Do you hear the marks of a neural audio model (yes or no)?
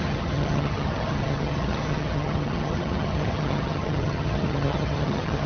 yes